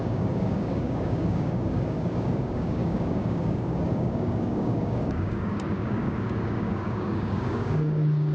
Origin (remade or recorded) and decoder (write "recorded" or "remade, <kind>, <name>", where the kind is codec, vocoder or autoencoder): remade, codec, DAC